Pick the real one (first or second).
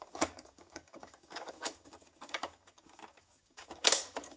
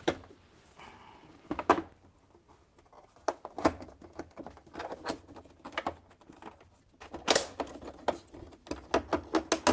second